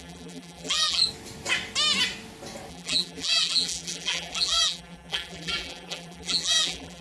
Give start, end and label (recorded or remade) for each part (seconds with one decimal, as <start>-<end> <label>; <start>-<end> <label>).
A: 0.0-1.0 remade; 1.0-2.7 recorded; 2.7-7.0 remade